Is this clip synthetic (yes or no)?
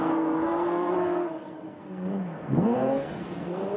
yes